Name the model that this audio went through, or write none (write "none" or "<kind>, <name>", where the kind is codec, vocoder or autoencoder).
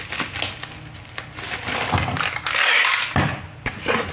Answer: none